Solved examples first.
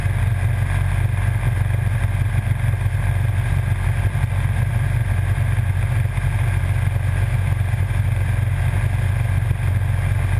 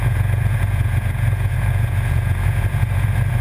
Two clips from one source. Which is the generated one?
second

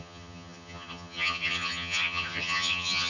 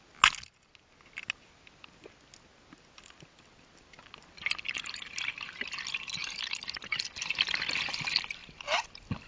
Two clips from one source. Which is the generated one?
first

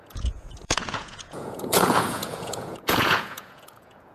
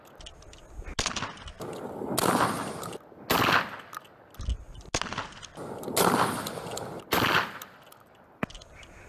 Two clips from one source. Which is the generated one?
first